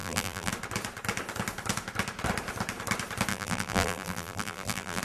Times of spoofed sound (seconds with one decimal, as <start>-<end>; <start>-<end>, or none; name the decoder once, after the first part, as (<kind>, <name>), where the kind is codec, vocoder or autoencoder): 0.0-0.5 (vocoder, BigVGAN v2); 3.3-5.0